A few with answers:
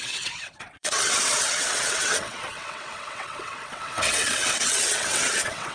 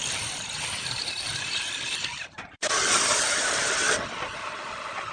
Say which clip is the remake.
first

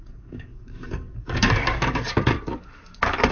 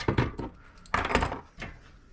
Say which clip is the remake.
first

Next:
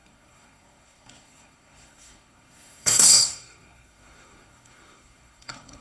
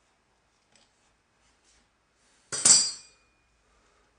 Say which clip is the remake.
first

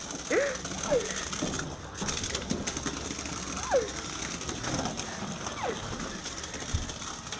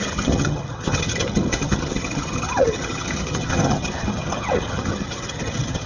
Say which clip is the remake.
second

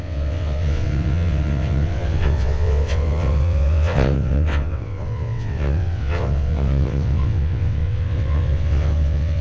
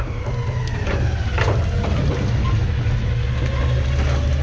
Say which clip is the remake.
first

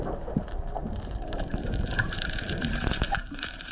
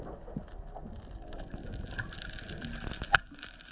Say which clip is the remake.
first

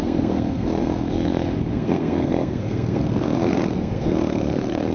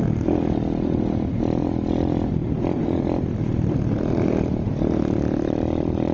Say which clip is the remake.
first